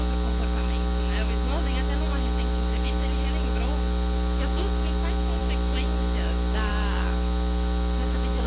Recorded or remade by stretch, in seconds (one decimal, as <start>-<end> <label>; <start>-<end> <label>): 0.0-8.5 recorded